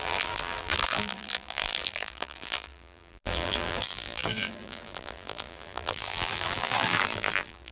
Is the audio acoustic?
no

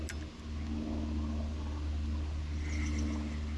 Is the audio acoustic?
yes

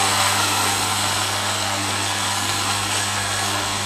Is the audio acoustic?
no